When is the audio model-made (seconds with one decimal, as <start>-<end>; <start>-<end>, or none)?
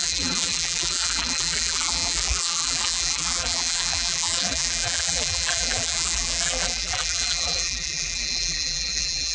0.0-9.3